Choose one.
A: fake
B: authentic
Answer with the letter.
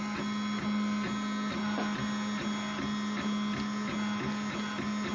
B